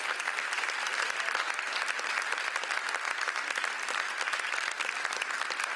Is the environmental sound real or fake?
real